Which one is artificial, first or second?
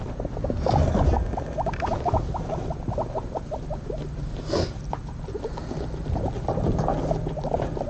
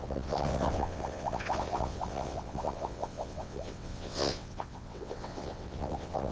second